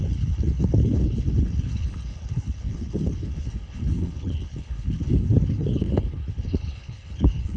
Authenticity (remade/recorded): remade